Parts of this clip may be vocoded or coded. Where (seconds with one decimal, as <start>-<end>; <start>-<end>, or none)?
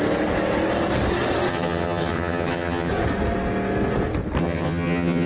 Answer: 1.5-2.9; 4.4-5.3